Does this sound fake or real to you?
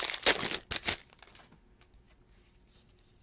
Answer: real